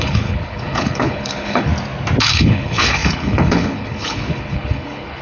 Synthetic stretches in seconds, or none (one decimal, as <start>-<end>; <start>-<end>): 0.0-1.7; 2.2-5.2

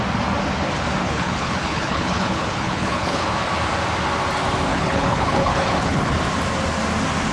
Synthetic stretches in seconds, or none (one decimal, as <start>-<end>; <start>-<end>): 1.0-3.3; 4.7-6.1

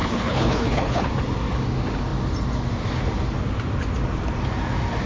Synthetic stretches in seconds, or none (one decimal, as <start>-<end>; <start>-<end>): 0.0-1.1

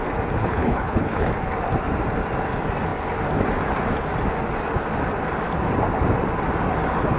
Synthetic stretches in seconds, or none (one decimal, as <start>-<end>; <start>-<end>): 0.4-1.3

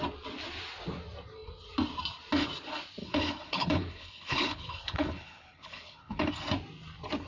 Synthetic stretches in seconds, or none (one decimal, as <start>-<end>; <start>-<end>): 3.0-6.3

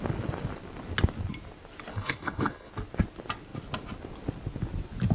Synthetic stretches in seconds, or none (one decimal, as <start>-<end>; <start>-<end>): 1.9-2.7

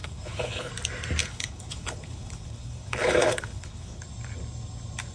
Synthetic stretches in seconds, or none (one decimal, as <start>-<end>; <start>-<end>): 0.0-0.7; 1.2-4.0